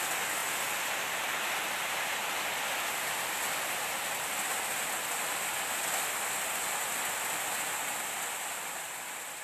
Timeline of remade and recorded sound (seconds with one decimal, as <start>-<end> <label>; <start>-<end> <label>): 0.0-9.4 recorded